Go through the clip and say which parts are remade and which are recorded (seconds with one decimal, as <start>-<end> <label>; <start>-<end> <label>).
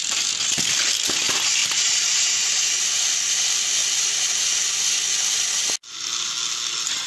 0.0-1.6 recorded; 1.6-2.6 remade; 2.6-7.1 recorded